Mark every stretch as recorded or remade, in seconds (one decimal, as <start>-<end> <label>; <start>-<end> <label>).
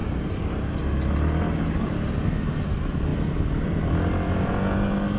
0.0-3.1 recorded; 3.1-4.5 remade; 4.5-5.2 recorded